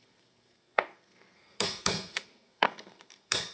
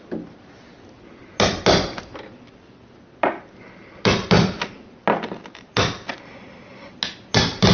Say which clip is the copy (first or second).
first